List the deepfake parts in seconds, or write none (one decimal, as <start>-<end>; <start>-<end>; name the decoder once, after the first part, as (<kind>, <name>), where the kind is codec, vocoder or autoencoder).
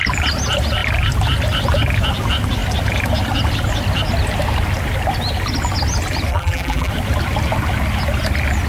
6.3-6.9 (vocoder, BigVGAN v2)